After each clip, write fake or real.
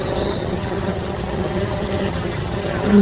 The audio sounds fake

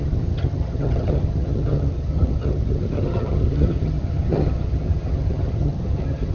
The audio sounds fake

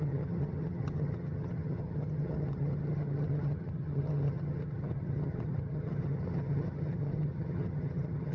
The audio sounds fake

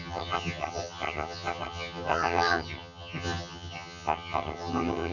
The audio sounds fake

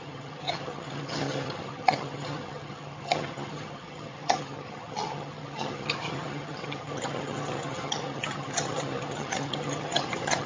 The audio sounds fake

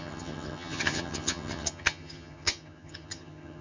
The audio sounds fake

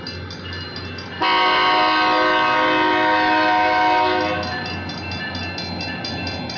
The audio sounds real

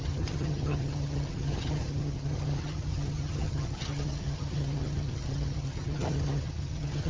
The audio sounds fake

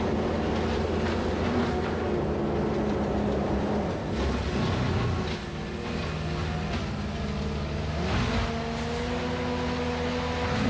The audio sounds real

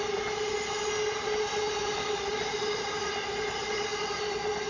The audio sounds real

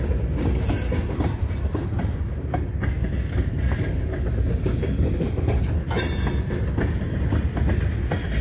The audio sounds real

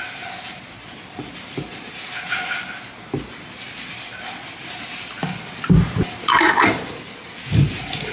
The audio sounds real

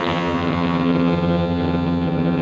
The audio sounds fake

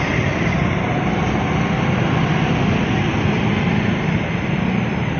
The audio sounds real